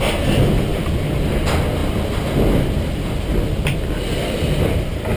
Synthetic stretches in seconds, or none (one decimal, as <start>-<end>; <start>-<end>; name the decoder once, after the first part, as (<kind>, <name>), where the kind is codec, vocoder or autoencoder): 0.7-1.3 (vocoder, BigVGAN v2); 1.8-5.2